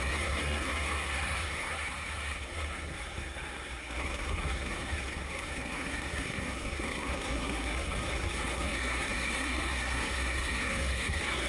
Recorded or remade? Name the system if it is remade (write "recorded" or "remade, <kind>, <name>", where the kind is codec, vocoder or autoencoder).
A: remade, codec, SNAC